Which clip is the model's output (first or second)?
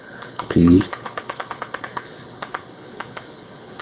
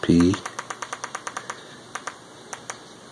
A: first